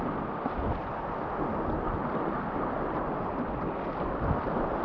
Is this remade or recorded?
recorded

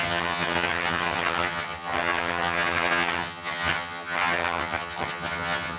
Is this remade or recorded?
remade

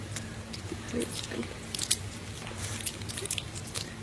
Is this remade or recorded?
recorded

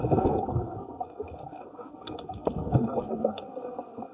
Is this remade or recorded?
remade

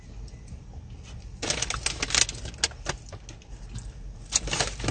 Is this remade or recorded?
recorded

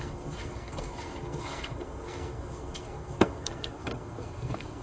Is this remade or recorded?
remade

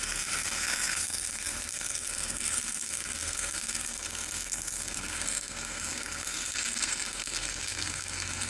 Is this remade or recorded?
remade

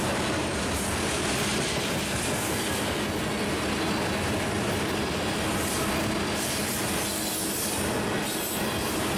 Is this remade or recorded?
recorded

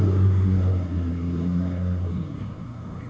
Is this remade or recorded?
remade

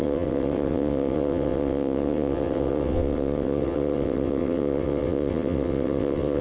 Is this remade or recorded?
remade